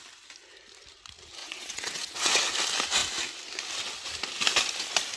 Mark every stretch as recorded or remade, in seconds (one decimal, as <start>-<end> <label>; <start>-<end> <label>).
0.0-1.4 recorded; 1.4-2.5 remade; 2.5-5.2 recorded